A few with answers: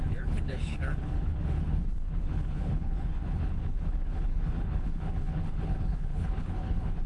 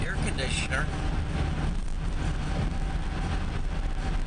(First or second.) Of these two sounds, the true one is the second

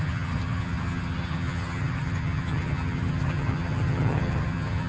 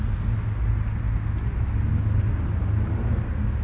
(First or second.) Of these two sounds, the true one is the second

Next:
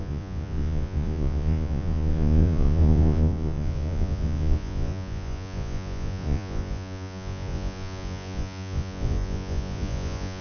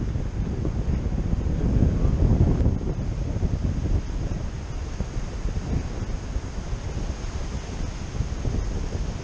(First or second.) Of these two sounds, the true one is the second